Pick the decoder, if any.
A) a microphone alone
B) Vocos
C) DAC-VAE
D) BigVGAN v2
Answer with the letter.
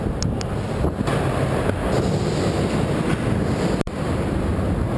A